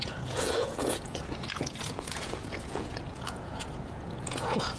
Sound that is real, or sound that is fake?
fake